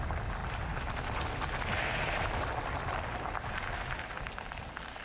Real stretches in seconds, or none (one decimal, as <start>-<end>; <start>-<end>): 0.0-5.0

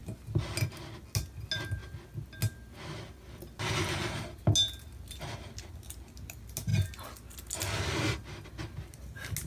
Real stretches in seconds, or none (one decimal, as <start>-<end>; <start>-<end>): 0.0-9.5